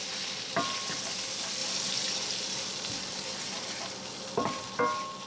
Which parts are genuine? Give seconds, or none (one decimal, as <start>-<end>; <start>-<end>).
0.0-5.3